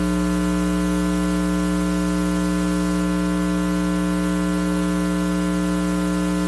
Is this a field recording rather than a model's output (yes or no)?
yes